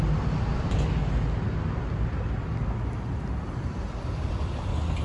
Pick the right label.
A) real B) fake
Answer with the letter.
A